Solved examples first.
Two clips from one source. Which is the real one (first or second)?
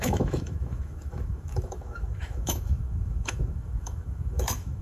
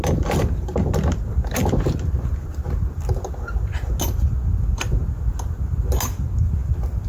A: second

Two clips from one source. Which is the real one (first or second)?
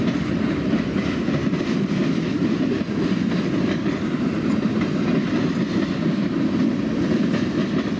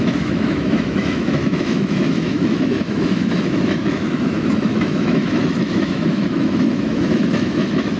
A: first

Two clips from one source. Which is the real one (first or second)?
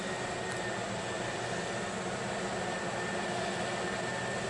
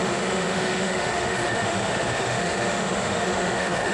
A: first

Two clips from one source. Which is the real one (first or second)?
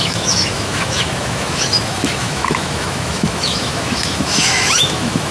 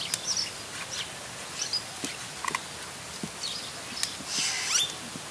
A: second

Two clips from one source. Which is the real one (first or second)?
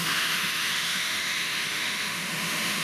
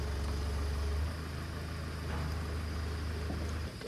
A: second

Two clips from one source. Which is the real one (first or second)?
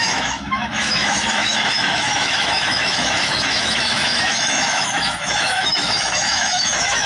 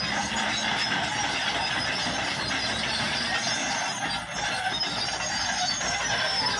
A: second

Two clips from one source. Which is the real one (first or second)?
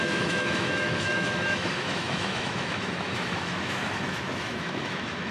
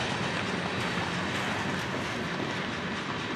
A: second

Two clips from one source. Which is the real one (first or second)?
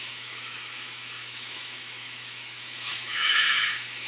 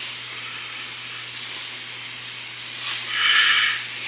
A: second